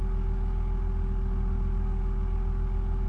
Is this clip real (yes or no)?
yes